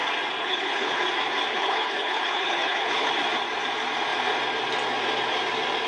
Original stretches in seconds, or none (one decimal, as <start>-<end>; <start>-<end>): 0.0-0.4; 1.0-1.5; 3.1-5.9

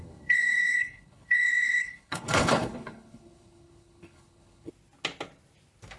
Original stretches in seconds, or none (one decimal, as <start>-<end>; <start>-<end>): 4.7-6.0